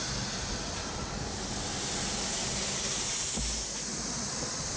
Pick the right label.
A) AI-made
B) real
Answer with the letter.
B